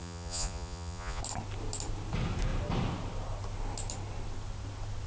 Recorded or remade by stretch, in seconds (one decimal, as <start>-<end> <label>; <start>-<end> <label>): 0.0-1.2 remade; 1.2-5.1 recorded